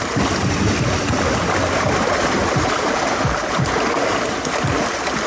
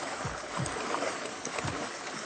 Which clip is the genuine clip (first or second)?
first